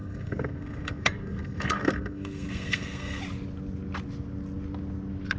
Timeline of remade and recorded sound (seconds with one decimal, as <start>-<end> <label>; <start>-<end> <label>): 0.0-3.2 remade; 3.2-5.4 recorded